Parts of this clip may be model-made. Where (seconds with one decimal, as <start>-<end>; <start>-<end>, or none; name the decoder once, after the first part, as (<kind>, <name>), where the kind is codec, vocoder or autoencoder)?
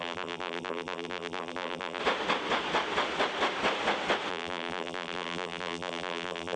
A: 0.0-2.0 (vocoder, BigVGAN v2); 4.3-6.6